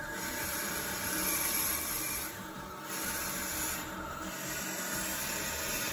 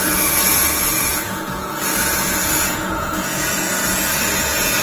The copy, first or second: second